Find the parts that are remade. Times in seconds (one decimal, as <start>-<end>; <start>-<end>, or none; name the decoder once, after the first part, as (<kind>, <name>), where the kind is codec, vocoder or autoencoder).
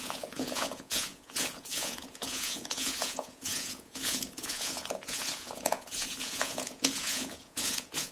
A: 0.0-8.1 (vocoder, Vocos)